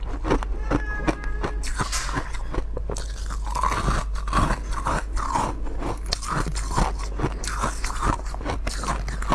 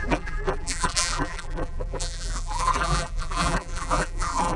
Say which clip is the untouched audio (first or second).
first